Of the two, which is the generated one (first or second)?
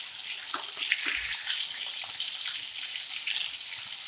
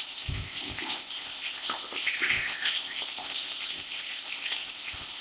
second